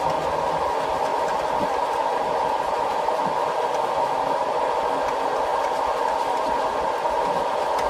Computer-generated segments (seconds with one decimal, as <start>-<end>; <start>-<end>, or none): 1.1-4.6